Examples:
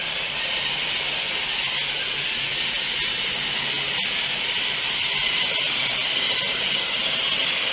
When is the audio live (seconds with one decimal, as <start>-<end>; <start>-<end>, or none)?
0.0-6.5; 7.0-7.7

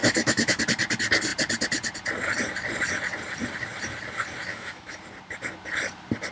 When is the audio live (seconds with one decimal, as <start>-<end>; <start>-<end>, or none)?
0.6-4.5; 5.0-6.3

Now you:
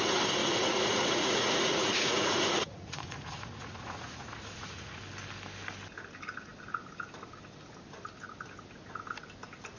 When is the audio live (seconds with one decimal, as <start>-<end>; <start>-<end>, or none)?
0.0-0.4; 5.0-9.8

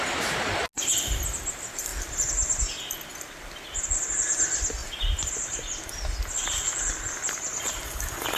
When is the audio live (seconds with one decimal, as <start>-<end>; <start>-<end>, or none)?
0.0-4.8; 5.3-8.4

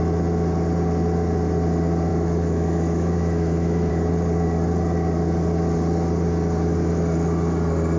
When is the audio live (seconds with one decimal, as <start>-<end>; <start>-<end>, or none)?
0.0-2.1; 3.9-8.0

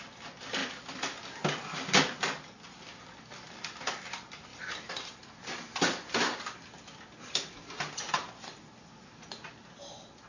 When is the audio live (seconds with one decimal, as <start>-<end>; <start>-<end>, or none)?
0.0-10.3

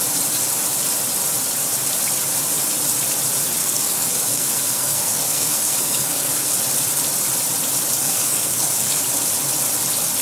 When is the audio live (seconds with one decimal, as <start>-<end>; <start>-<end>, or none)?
0.0-3.6; 6.5-8.0; 9.0-10.2